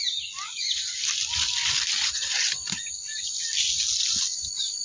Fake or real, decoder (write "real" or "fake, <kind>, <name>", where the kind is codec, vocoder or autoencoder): real